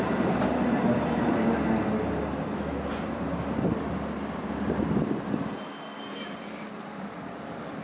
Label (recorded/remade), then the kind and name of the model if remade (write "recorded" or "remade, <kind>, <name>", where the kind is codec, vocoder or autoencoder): recorded